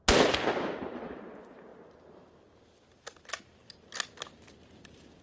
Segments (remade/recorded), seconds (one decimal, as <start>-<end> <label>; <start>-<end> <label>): 0.0-0.6 recorded; 0.6-1.7 remade; 1.7-4.8 recorded; 4.8-5.2 remade